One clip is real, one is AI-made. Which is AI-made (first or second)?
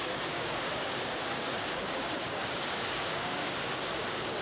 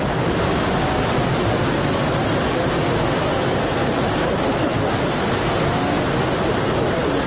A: first